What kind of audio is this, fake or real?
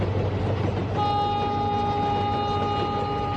real